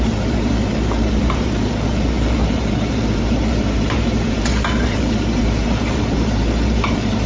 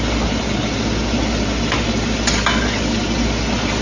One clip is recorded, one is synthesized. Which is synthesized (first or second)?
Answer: first